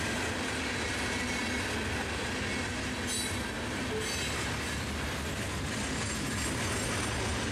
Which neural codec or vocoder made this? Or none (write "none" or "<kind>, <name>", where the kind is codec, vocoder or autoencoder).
none